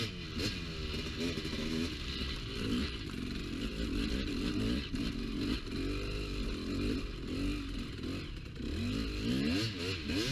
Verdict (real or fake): real